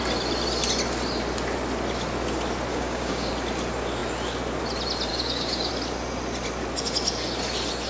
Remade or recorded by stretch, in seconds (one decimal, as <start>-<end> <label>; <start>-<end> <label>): 0.0-2.7 recorded; 2.7-3.3 remade; 3.3-5.1 recorded; 5.1-5.7 remade; 5.7-7.9 recorded